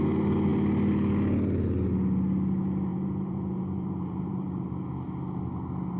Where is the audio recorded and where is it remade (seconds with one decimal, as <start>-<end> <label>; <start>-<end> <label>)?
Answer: 0.0-2.9 recorded; 2.9-4.6 remade; 4.6-6.0 recorded